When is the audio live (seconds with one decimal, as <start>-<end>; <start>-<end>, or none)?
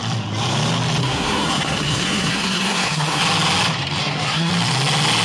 0.0-1.0; 3.2-4.0; 4.5-5.2